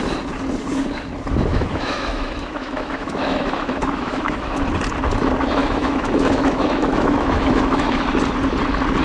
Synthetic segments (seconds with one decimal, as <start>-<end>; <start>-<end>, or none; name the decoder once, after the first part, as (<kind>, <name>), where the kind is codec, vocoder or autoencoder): 1.5-4.6 (autoencoder, DAC-VAE); 5.6-8.0

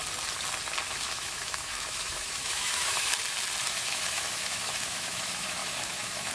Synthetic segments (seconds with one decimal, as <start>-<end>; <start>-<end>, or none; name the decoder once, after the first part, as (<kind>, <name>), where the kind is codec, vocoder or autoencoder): 0.9-3.1 (autoencoder, DAC-VAE); 3.6-6.3

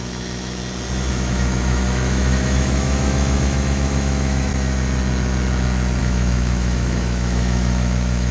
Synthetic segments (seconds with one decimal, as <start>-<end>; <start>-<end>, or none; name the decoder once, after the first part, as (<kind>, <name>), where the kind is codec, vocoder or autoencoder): 0.0-0.6 (autoencoder, DAC-VAE); 1.1-4.5; 6.0-8.3

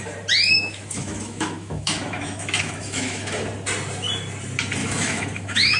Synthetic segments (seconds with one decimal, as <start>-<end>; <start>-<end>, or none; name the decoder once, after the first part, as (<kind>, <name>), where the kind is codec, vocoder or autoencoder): 0.5-3.5 (autoencoder, DAC-VAE); 4.8-5.8

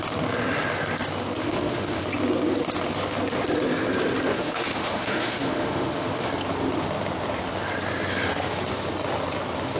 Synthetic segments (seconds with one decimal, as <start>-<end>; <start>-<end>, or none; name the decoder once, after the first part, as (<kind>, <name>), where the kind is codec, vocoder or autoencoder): 1.4-2.0 (autoencoder, DAC-VAE); 4.3-6.3

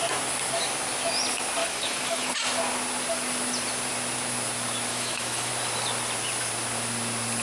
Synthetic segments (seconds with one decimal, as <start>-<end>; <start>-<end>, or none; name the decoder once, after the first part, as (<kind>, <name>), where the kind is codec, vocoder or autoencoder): 1.6-2.3 (autoencoder, DAC-VAE); 4.9-5.5

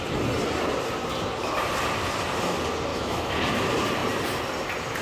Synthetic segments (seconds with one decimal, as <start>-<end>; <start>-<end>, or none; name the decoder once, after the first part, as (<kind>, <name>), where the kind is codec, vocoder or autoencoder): 2.9-3.5 (autoencoder, DAC-VAE)